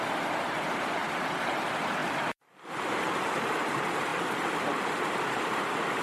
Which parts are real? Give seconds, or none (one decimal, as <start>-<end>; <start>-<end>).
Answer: 1.0-1.5; 2.0-2.7; 4.1-5.1